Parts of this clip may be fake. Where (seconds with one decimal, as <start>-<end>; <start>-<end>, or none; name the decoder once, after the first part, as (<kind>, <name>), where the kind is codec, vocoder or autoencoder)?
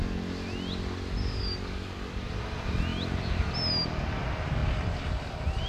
1.2-2.3 (codec, DAC)